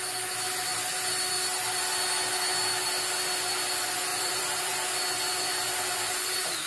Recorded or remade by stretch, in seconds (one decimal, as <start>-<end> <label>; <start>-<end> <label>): 0.0-4.1 recorded; 4.1-4.9 remade; 4.9-6.7 recorded